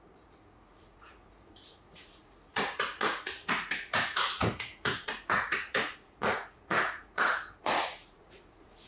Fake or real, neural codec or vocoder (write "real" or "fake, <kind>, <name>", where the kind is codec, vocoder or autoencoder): fake, vocoder, Vocos